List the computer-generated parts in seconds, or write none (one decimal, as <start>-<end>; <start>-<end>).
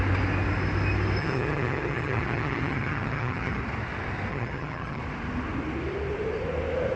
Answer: 1.2-3.6; 4.3-5.0